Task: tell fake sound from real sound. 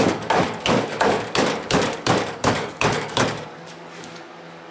fake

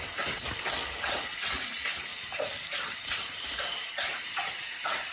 real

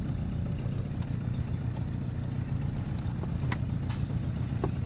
real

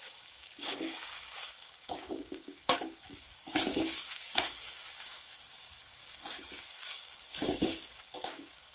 fake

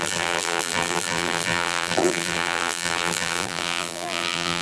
fake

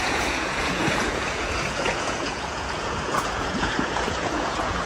fake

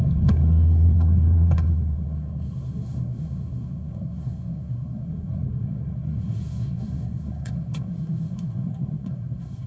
fake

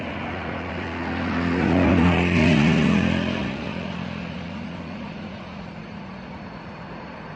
fake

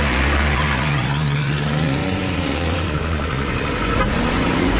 fake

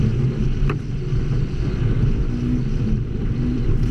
real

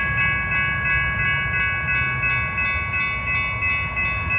real